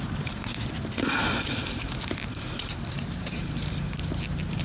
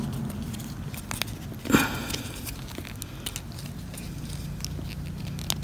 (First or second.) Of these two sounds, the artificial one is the first